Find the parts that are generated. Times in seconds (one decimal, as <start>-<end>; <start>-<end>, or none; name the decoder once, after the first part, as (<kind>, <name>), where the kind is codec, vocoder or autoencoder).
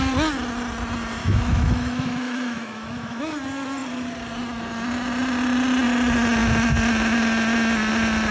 1.2-3.2 (autoencoder, DAC-VAE)